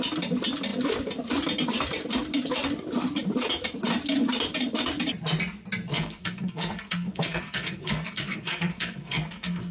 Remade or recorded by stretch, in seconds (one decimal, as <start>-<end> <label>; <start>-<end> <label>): 0.0-5.9 recorded; 5.9-9.7 remade